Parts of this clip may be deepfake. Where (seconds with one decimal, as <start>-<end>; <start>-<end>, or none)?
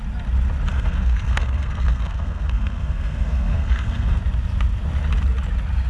0.7-4.2